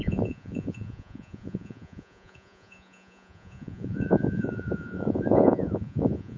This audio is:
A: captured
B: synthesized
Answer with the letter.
B